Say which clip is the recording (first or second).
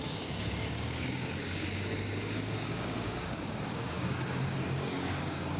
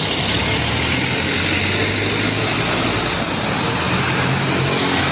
second